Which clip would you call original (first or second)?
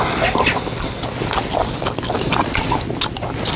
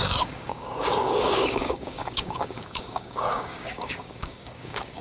first